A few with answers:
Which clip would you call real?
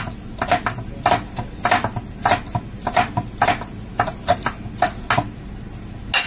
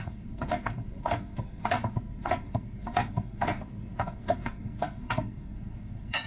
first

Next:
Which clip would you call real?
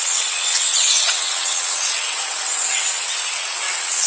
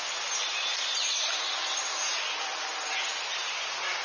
second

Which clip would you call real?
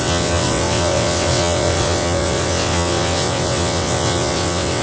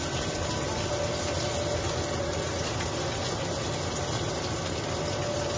second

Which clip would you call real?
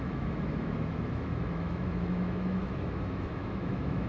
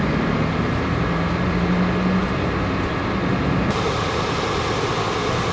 second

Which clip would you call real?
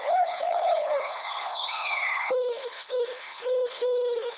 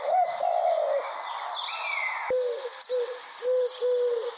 second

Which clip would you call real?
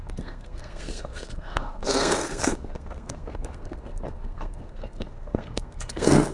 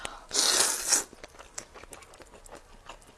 second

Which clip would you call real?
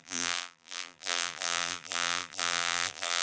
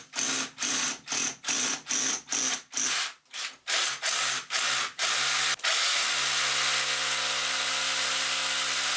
second